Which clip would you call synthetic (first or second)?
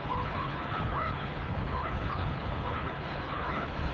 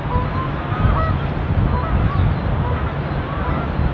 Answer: first